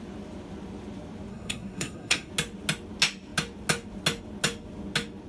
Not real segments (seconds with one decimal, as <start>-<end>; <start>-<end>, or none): 1.3-2.3